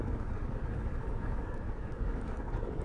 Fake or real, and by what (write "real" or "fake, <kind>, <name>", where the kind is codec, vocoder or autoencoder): fake, codec, DAC